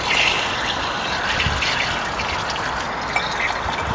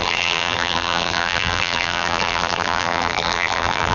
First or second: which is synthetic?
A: second